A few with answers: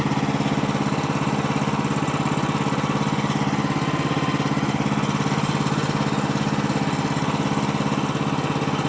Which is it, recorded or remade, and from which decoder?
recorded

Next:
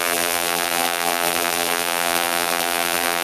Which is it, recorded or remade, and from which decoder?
remade, vocoder, BigVGAN v2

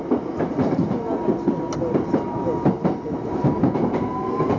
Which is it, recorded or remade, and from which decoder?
recorded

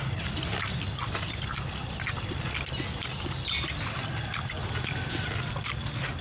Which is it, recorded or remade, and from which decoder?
recorded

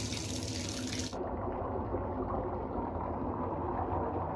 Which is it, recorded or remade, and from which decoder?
recorded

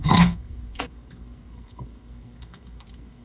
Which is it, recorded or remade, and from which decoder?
remade, codec, SNAC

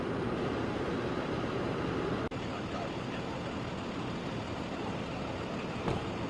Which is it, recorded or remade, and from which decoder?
recorded